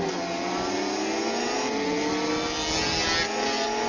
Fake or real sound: real